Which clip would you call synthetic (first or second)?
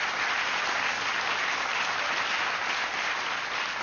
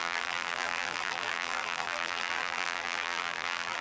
second